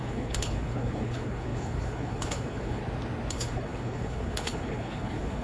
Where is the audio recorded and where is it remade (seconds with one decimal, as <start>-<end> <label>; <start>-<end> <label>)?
0.0-2.8 remade; 2.8-3.3 recorded; 3.3-5.4 remade